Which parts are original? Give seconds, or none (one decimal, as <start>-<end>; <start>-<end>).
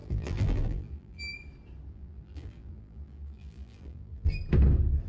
1.2-1.9; 4.4-5.1